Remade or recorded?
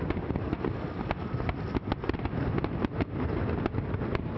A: recorded